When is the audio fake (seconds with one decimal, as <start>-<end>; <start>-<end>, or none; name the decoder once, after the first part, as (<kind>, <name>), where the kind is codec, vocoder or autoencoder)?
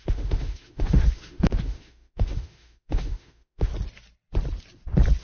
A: 0.0-3.7 (autoencoder, DAC-VAE)